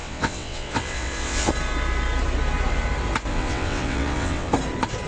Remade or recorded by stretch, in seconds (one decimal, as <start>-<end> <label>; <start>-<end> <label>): 0.0-1.5 remade; 1.5-3.3 recorded; 3.3-4.5 remade; 4.5-5.1 recorded